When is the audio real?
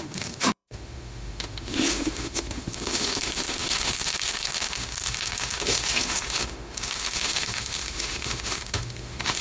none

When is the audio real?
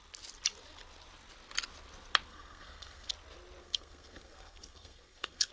0.0-2.3; 3.1-3.6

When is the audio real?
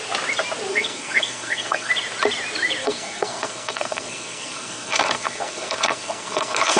0.0-0.7; 1.9-2.8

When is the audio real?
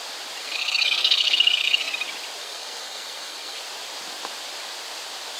0.0-0.4; 1.9-2.4; 3.6-5.4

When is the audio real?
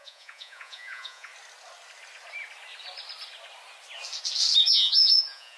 1.3-4.7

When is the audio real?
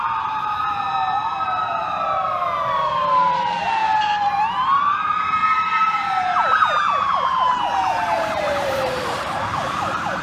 5.4-6.0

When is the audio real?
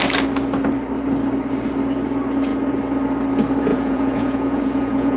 0.0-3.7